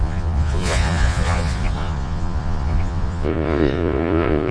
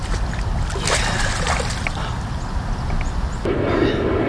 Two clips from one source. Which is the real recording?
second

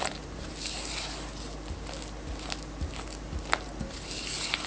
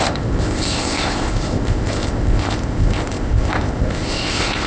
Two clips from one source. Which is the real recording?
first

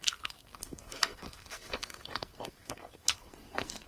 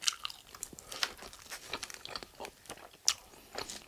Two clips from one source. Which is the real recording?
second